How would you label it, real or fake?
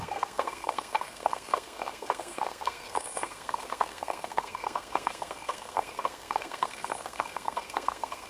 fake